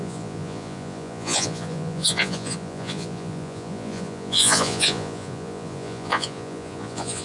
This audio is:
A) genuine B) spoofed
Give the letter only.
B